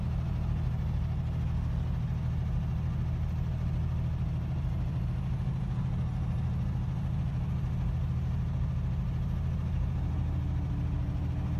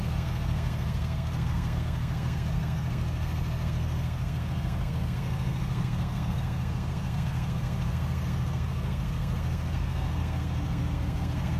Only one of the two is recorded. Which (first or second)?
first